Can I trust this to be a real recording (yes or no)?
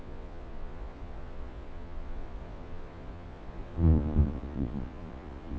no